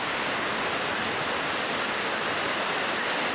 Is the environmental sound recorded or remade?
recorded